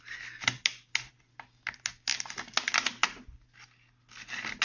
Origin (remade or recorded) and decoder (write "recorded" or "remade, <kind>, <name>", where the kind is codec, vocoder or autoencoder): recorded